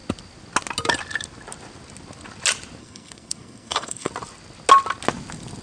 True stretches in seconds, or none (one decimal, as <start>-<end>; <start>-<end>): 0.0-2.8; 4.1-5.6